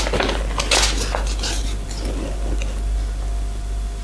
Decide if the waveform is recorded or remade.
recorded